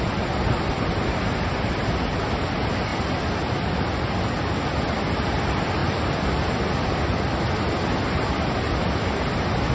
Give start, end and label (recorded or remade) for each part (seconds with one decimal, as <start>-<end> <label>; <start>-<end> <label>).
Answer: 0.0-5.8 recorded; 5.8-7.4 remade; 7.4-9.7 recorded